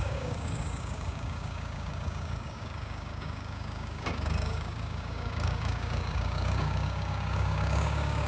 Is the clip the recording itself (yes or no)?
no